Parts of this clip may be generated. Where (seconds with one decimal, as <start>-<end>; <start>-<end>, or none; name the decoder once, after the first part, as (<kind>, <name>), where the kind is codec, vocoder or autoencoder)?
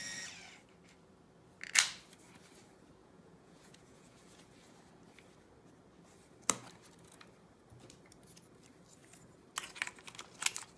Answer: 3.0-4.5 (vocoder, Vocos)